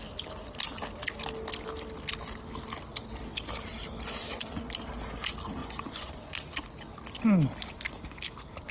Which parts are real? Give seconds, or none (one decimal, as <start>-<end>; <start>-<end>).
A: 0.0-5.6; 6.3-8.7

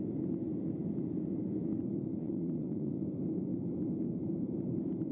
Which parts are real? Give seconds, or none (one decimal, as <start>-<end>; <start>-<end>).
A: 0.0-2.2; 2.9-5.1

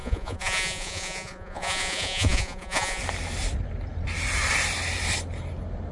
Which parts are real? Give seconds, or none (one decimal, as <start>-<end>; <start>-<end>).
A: 3.0-5.9

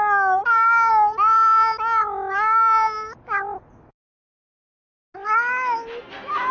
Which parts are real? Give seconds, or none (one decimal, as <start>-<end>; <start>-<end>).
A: 0.0-6.5